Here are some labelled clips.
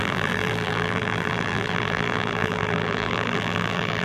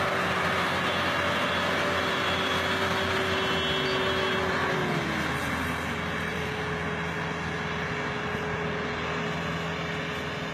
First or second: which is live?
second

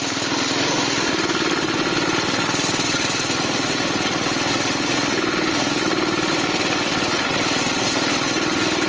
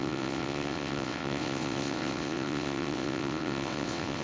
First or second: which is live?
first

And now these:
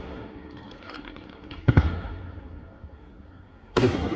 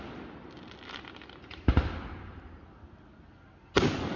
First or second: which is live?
second